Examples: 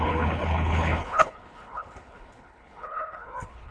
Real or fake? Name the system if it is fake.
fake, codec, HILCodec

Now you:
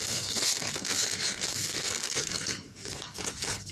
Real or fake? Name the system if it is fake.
fake, codec, SNAC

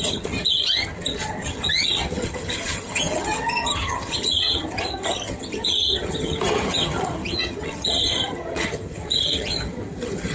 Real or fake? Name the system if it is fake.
fake, vocoder, HiFi-GAN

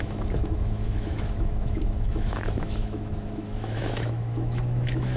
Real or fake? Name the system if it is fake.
fake, autoencoder, DAC-VAE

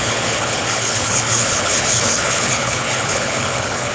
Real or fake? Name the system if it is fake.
fake, codec, HILCodec